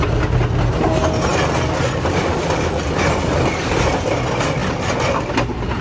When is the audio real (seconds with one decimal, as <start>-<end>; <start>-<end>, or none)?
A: 0.0-5.8